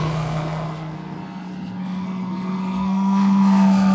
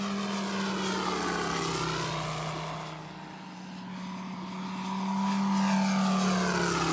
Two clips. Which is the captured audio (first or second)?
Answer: second